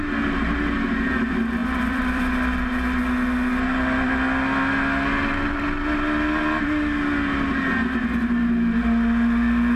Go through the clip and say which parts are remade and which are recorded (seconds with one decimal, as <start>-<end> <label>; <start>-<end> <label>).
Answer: 0.0-1.6 recorded; 1.6-2.2 remade; 2.2-9.8 recorded